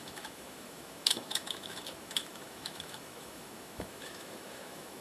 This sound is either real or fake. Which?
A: fake